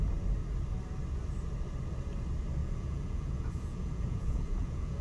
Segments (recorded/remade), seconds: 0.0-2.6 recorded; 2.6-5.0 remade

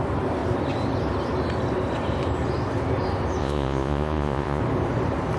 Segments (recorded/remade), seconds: 0.0-3.4 recorded; 3.4-4.6 remade; 4.6-5.4 recorded